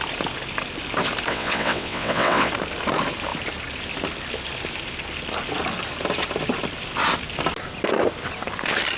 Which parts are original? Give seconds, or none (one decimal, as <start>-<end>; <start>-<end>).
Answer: 0.0-1.3; 2.5-9.0